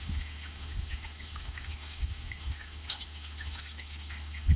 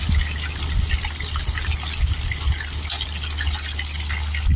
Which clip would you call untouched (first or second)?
second